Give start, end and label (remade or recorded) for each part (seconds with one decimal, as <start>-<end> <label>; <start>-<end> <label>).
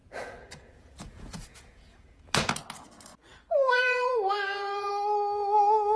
0.0-2.5 remade; 2.5-3.3 recorded; 3.3-4.9 remade; 4.9-6.0 recorded